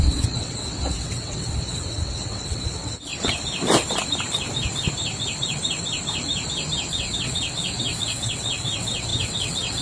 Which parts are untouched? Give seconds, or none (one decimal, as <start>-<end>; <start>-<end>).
3.1-6.9